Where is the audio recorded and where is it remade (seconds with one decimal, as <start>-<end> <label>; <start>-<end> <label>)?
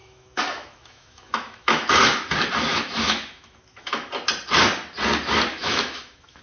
0.0-1.9 remade; 1.9-2.7 recorded; 2.7-4.1 remade; 4.1-5.5 recorded; 5.5-6.4 remade